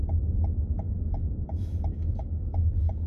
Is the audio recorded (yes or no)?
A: no